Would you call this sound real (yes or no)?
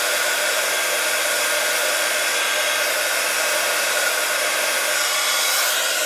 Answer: yes